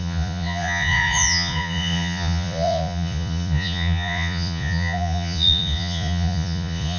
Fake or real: fake